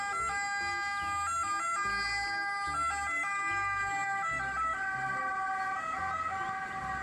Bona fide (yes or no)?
yes